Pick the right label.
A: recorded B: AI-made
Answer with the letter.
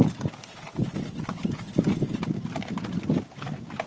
A